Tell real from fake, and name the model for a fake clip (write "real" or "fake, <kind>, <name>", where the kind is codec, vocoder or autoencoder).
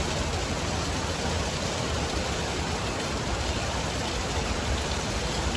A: fake, vocoder, BigVGAN v2